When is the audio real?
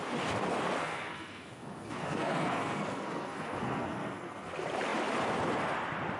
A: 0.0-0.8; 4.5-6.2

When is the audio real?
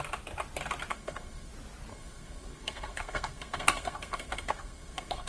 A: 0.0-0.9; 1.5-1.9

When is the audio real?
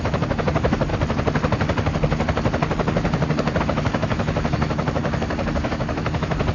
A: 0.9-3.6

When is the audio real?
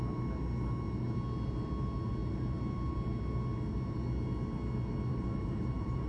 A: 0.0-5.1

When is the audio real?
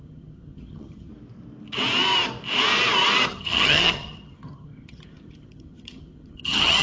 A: 1.1-3.3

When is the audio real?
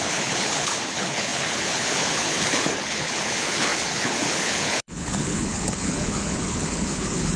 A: none